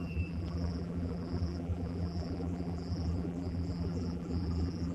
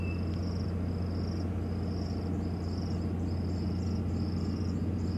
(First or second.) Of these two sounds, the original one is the second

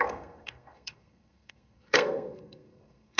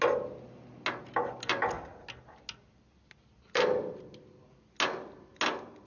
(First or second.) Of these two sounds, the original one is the second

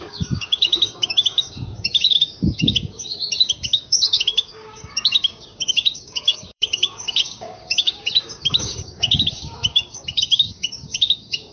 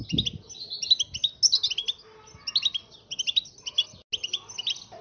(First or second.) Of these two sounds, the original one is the second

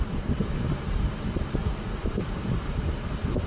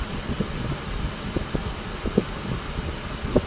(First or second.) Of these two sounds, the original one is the second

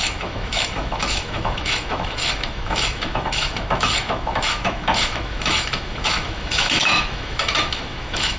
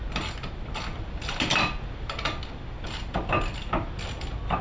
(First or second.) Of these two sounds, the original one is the second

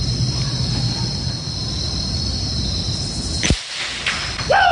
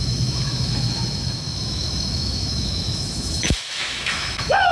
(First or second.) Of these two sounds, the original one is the first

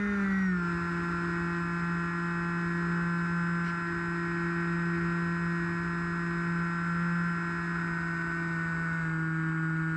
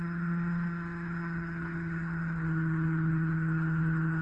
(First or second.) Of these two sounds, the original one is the first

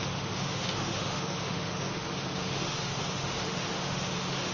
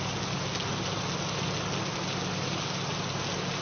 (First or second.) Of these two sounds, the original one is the second